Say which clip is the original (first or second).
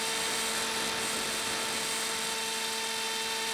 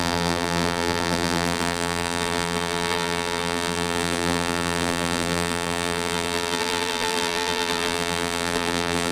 first